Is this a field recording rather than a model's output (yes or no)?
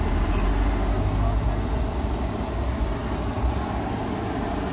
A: yes